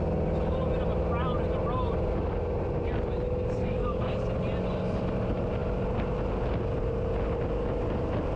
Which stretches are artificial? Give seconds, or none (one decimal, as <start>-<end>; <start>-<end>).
3.6-4.2